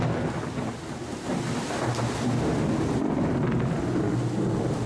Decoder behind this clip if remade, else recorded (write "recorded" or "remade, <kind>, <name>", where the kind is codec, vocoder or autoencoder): recorded